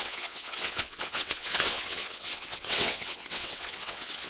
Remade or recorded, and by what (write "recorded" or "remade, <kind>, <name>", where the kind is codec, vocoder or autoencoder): remade, vocoder, WaveNeXt